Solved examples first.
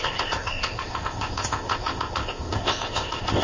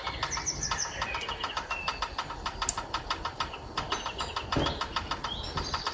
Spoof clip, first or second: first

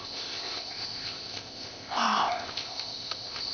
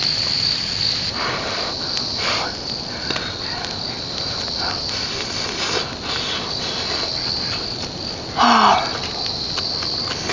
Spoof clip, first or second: first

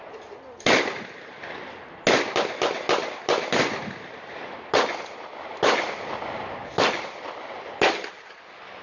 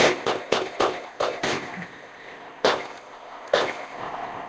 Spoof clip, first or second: second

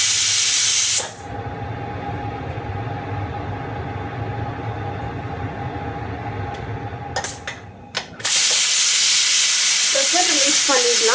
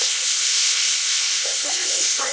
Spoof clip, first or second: second